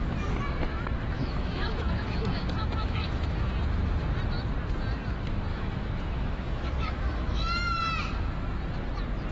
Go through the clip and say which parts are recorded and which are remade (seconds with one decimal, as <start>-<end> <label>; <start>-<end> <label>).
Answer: 0.0-0.7 recorded; 0.7-3.5 remade; 3.5-5.5 recorded; 5.5-7.8 remade; 7.8-9.3 recorded